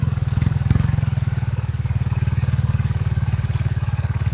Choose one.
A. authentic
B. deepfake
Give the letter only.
B